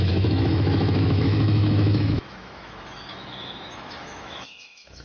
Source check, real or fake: fake